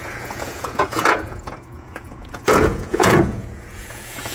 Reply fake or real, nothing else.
fake